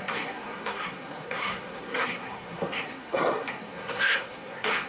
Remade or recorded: remade